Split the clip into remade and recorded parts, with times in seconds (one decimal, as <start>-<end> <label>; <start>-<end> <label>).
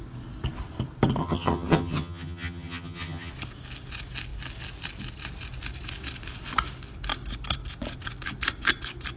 0.0-1.2 recorded; 1.2-3.3 remade; 3.3-9.2 recorded